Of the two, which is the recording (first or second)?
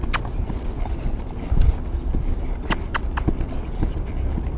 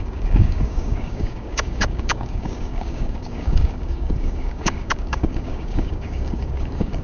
first